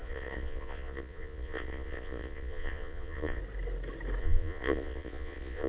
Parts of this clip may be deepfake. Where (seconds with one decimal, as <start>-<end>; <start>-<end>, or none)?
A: 0.0-3.4; 4.2-5.7